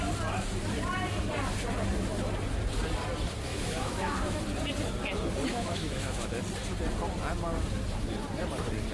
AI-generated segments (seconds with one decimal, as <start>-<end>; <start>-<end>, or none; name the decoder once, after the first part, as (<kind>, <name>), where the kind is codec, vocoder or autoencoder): 3.5-4.4 (autoencoder, DAC-VAE); 5.5-6.3